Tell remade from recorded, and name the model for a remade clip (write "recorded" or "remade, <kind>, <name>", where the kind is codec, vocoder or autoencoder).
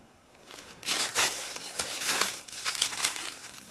remade, codec, SNAC